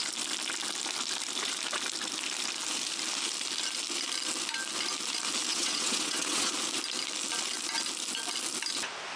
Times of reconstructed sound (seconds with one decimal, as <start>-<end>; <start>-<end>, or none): 5.5-6.5

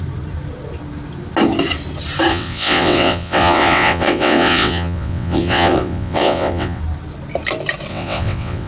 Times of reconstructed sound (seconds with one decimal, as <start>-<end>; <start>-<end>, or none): 2.3-6.8; 7.9-8.7

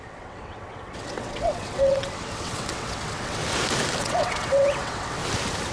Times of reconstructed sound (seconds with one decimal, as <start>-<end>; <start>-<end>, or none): 0.0-3.4; 4.0-5.2

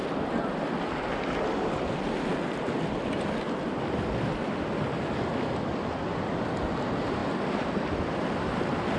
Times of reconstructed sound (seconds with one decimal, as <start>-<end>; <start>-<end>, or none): none

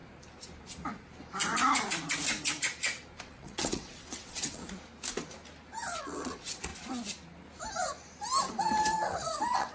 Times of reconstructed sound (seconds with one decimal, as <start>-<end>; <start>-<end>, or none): 3.2-4.6; 6.0-6.7; 8.5-9.7